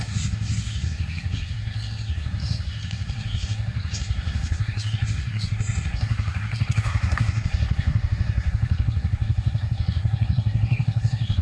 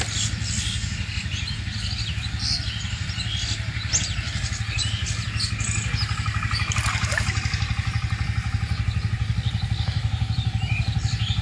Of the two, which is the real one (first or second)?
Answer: second